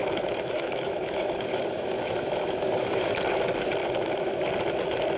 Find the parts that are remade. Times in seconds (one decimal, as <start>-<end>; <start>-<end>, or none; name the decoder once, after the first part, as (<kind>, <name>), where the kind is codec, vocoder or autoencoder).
0.0-3.1 (autoencoder, DAC-VAE); 3.8-4.5